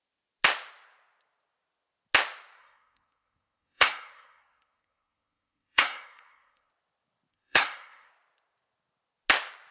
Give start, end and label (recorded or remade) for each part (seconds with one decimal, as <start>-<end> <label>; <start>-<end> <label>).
0.0-2.6 recorded; 2.6-6.7 remade; 6.7-7.3 recorded; 7.3-8.1 remade; 8.1-9.7 recorded